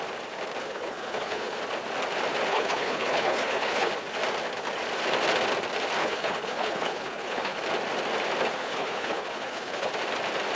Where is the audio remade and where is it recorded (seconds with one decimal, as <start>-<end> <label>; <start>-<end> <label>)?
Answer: 0.0-0.6 recorded; 0.6-1.6 remade; 1.6-2.5 recorded; 2.5-3.9 remade; 3.9-6.0 recorded; 6.0-7.6 remade; 7.6-8.6 recorded; 8.6-9.9 remade; 9.9-10.6 recorded